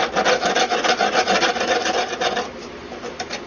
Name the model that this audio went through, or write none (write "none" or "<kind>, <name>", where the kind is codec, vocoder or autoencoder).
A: none